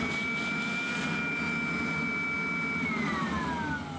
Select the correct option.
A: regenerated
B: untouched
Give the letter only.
B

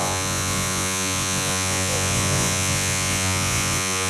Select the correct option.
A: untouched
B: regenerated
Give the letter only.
B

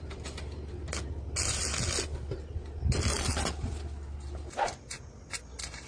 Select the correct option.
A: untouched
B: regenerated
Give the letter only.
A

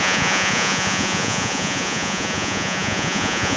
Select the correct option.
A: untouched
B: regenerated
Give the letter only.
B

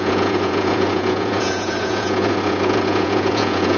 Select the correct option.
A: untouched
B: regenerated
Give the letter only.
B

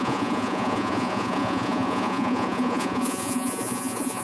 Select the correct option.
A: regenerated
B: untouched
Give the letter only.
A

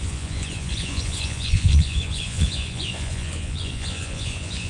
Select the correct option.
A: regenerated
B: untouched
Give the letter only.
A